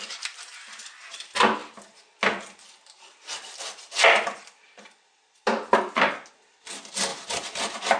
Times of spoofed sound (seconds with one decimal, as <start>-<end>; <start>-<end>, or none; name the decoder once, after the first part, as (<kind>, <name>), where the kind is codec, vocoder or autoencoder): 7.1-8.0 (vocoder, BigVGAN v2)